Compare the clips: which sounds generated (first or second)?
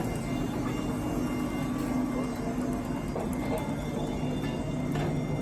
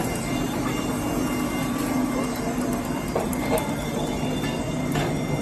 second